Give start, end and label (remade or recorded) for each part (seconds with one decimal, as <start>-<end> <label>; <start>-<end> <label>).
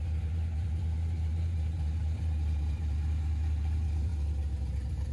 0.0-4.1 remade; 4.1-5.1 recorded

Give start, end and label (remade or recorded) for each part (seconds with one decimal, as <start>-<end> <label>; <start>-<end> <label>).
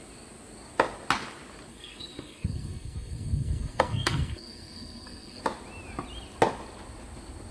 0.0-1.7 recorded; 1.7-5.4 remade; 5.4-7.5 recorded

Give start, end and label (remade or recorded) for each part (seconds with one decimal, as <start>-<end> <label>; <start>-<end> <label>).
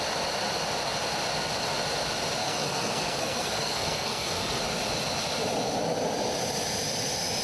0.0-2.4 recorded; 2.4-4.6 remade; 4.6-7.4 recorded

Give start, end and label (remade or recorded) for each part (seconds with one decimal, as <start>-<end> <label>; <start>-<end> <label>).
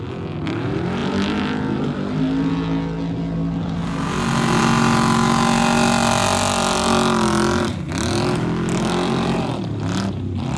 0.0-10.6 recorded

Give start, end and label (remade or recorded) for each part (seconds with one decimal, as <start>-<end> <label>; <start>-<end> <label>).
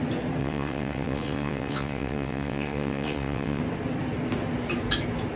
0.0-0.4 recorded; 0.4-3.6 remade; 3.6-5.4 recorded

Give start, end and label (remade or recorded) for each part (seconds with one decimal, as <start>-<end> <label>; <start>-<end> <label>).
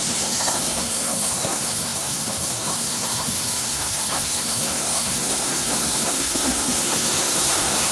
0.0-7.9 remade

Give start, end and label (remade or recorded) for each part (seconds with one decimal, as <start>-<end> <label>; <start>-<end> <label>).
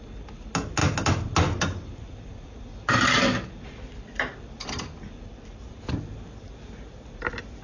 0.0-7.6 recorded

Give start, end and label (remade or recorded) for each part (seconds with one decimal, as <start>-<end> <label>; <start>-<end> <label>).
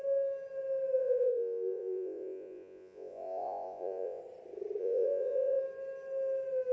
0.0-1.0 recorded; 1.0-4.2 remade; 4.2-4.8 recorded; 4.8-5.6 remade; 5.6-6.7 recorded